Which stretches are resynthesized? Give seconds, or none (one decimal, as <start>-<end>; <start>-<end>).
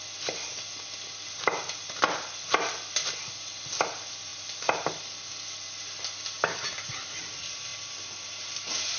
none